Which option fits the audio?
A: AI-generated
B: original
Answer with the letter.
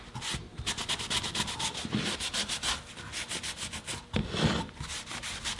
B